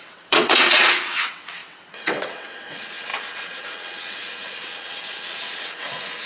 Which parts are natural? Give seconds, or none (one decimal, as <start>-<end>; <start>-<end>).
none